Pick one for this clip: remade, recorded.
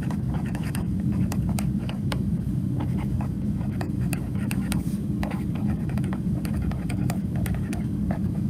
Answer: remade